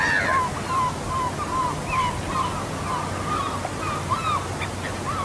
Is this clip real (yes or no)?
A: yes